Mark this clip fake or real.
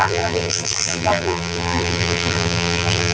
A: fake